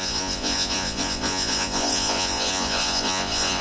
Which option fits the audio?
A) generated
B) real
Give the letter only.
A